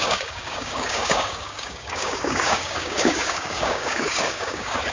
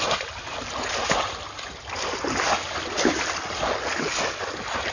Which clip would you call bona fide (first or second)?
second